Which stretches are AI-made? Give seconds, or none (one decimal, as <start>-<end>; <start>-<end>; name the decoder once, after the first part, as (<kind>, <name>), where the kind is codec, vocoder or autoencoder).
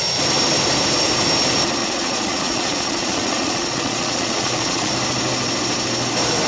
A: 1.8-4.9 (vocoder, Vocos)